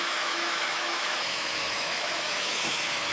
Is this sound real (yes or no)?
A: no